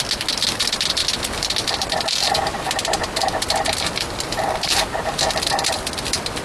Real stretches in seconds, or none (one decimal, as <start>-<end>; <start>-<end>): 0.0-6.4